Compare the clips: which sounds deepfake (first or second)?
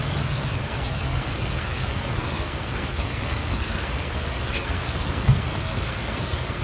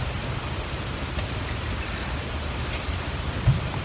first